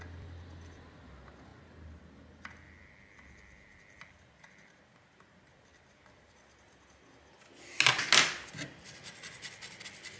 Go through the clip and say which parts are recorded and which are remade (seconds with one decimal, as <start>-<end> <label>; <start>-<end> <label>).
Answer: 0.0-10.2 recorded